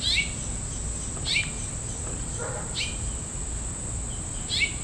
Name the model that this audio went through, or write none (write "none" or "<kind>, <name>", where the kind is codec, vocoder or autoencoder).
none